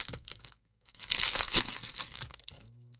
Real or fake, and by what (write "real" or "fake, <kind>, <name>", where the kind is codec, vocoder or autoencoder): fake, codec, SNAC